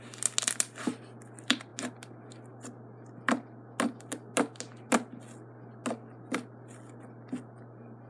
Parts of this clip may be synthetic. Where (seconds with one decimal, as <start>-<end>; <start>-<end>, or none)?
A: none